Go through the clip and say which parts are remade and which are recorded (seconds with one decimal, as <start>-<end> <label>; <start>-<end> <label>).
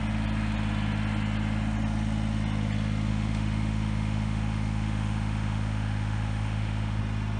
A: 0.0-3.1 recorded; 3.1-7.0 remade; 7.0-7.4 recorded